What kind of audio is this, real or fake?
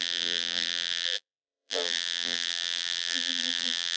fake